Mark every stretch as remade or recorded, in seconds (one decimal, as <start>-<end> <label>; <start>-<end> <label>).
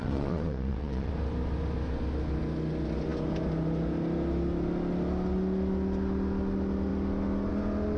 0.0-1.1 remade; 1.1-8.0 recorded